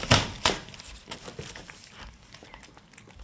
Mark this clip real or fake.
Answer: real